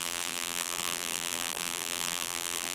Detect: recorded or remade remade